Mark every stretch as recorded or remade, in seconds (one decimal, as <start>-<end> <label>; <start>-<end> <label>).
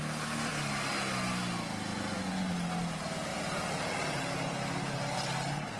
0.0-1.9 recorded; 1.9-2.5 remade; 2.5-5.8 recorded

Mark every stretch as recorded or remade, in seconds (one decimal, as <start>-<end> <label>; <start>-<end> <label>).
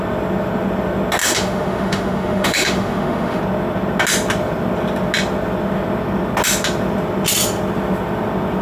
0.0-1.2 recorded; 1.2-3.4 remade; 3.4-8.6 recorded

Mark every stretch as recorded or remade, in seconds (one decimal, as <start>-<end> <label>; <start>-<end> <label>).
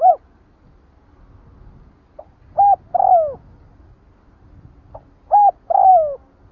0.0-6.5 recorded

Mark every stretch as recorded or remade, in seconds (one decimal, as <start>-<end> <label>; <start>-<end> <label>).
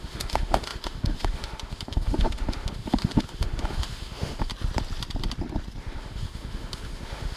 0.0-4.5 remade; 4.5-5.8 recorded; 5.8-7.4 remade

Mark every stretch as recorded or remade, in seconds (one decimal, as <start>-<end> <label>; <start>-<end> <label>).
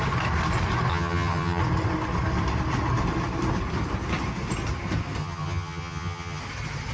0.0-0.9 recorded; 0.9-1.6 remade; 1.6-5.2 recorded; 5.2-6.4 remade; 6.4-6.9 recorded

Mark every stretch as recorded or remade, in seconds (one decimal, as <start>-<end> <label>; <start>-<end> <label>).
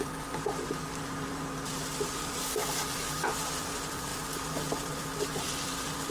0.0-6.1 recorded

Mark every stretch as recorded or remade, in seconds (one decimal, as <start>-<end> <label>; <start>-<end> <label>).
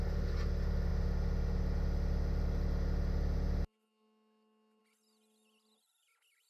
0.0-6.5 recorded